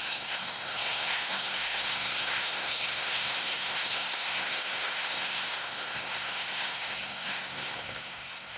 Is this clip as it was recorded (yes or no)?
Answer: no